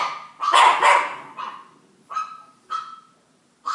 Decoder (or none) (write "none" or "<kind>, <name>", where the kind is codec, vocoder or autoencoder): none